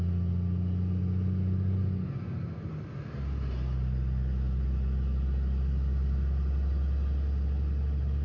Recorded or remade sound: recorded